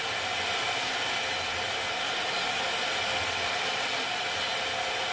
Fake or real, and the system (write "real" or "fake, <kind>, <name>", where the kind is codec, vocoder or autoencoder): real